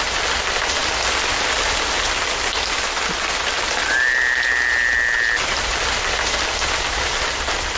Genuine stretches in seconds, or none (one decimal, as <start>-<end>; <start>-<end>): 0.0-7.8